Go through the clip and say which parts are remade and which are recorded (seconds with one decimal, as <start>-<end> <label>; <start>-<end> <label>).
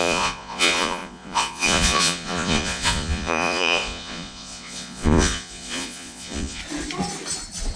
0.0-6.6 remade; 6.6-7.8 recorded